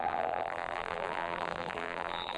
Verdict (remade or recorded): remade